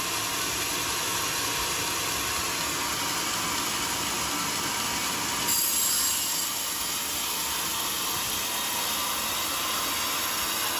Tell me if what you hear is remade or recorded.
recorded